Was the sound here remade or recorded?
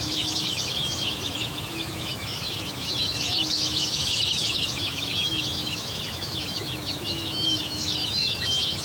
remade